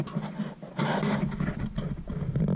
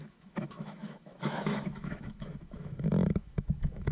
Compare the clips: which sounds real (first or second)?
first